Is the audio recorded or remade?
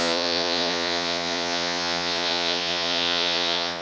remade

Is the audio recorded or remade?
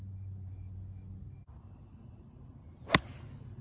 recorded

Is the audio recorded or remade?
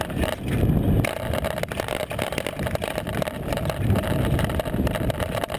recorded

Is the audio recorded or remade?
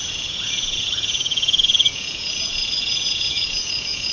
remade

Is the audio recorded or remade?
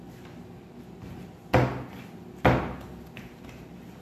recorded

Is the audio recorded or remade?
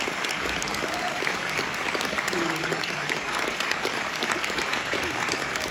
remade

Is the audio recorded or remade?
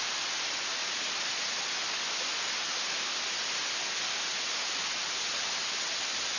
recorded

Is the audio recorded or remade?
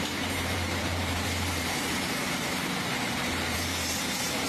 remade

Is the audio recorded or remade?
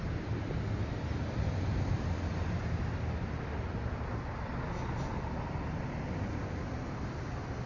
recorded